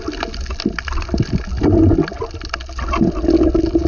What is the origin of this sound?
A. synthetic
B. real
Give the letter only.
B